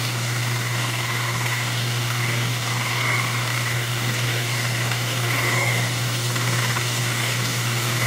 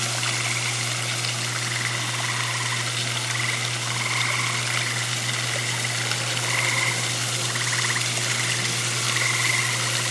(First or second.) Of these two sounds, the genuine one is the second